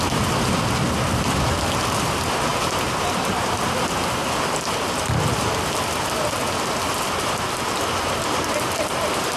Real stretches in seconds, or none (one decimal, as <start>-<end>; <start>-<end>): 0.0-2.5; 3.3-9.4